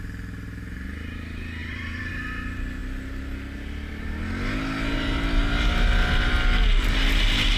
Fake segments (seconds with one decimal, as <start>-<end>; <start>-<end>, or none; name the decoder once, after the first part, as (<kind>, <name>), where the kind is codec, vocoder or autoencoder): 1.6-2.1 (vocoder, BigVGAN v2)